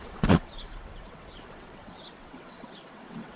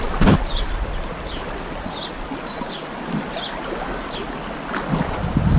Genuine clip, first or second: second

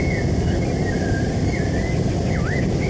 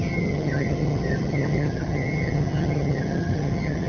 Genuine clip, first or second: first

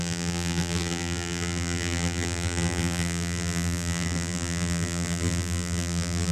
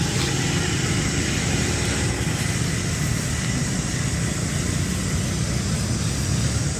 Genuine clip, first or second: second